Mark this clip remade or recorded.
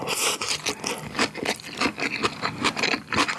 recorded